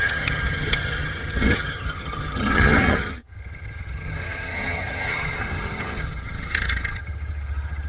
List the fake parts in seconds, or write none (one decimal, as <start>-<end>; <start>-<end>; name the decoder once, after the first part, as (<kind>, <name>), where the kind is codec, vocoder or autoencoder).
0.0-7.9 (vocoder, HiFi-GAN)